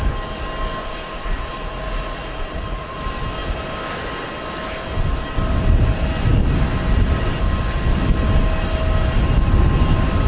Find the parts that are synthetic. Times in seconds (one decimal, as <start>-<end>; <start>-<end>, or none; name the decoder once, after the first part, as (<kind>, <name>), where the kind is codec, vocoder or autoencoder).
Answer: 0.8-3.0 (vocoder, Vocos)